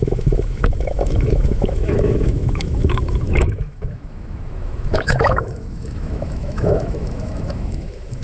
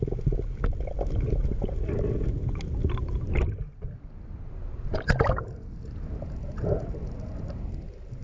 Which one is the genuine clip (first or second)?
second